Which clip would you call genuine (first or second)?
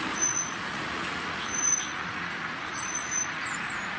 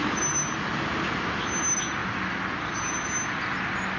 second